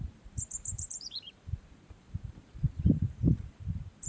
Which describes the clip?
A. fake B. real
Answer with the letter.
A